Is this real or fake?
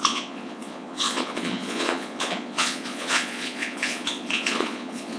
fake